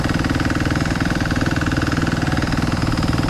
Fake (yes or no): no